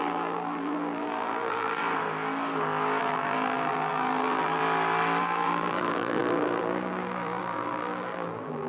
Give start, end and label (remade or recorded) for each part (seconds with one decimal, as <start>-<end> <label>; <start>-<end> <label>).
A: 0.0-1.8 remade; 1.8-3.0 recorded; 3.0-4.6 remade; 4.6-5.2 recorded; 5.2-8.7 remade